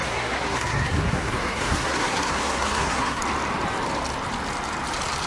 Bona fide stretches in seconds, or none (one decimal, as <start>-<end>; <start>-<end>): 3.2-5.3